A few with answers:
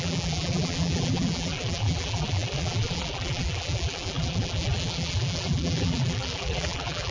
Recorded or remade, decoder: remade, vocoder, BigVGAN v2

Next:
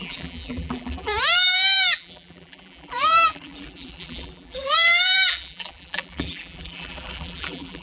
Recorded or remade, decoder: remade, vocoder, BigVGAN v2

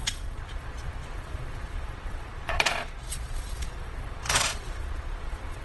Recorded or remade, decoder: remade, vocoder, Vocos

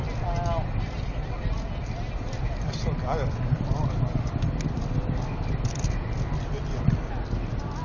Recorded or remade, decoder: recorded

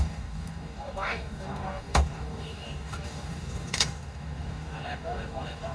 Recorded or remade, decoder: remade, codec, DAC